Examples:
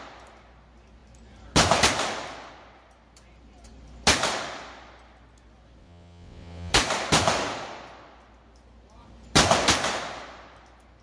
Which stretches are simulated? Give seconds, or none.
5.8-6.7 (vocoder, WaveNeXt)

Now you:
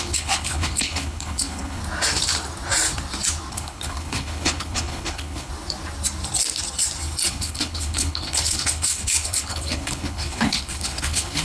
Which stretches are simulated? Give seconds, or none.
0.0-1.8 (codec, HILCodec); 3.5-5.5; 7.3-11.4

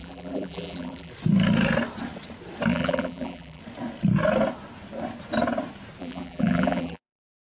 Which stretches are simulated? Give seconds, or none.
0.0-1.1 (vocoder, BigVGAN v2); 2.7-3.6; 6.0-7.5

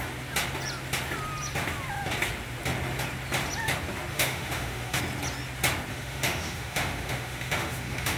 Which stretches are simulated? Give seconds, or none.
4.1-5.0 (autoencoder, DAC-VAE); 5.9-8.2

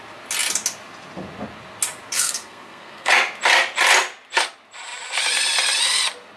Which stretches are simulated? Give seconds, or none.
2.1-3.1 (codec, SNAC)

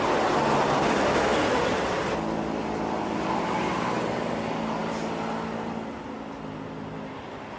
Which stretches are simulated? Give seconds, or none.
none

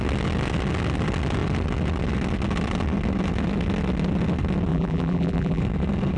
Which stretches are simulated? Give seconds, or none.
4.7-5.6 (vocoder, BigVGAN v2)

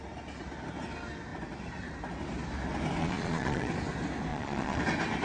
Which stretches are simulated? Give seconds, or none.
3.0-3.7 (vocoder, Vocos); 4.3-4.8